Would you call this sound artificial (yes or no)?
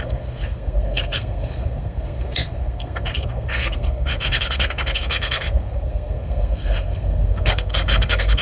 yes